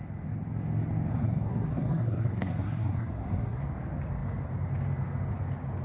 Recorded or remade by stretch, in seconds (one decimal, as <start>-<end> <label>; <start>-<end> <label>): 0.0-1.1 recorded; 1.1-3.6 remade; 3.6-5.8 recorded